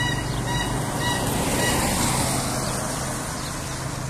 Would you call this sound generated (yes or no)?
no